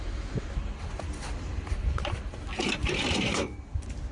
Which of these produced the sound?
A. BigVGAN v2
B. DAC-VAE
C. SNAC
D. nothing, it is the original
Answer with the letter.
D